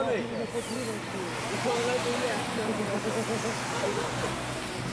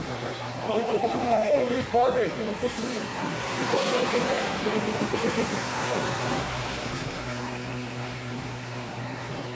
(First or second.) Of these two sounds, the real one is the first